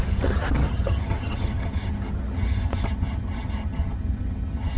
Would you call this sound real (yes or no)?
no